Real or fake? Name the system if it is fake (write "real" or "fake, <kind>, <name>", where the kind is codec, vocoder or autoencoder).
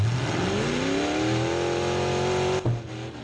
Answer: real